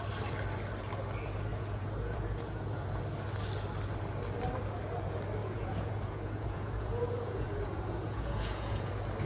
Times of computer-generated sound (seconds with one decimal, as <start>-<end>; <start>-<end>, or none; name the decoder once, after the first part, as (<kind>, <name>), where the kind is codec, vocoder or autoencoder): 1.5-3.0 (vocoder, Vocos); 5.4-8.9